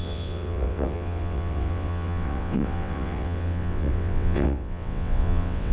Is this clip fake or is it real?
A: fake